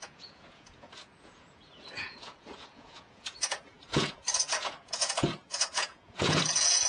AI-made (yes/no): yes